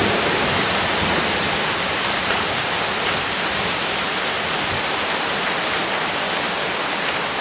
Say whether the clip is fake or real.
real